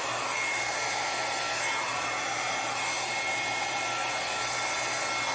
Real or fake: real